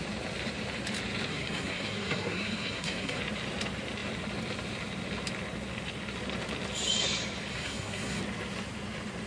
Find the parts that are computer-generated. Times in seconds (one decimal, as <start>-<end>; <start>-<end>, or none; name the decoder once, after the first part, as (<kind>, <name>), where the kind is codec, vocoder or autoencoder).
1.3-3.2 (codec, SNAC); 7.5-8.2